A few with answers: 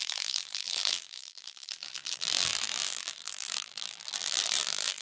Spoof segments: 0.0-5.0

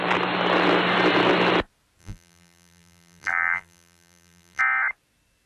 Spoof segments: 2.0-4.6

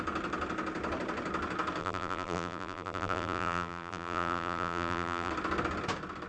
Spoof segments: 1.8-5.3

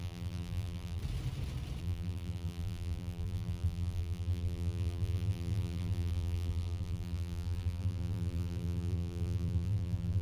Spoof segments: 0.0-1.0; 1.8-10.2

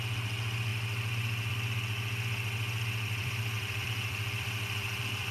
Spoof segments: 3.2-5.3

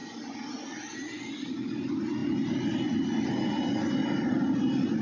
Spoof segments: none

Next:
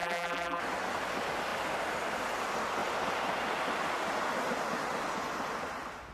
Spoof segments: 0.0-0.6